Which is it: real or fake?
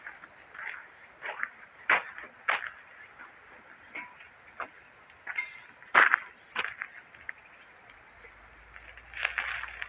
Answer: real